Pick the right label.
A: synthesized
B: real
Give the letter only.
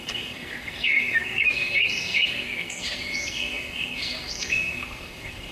A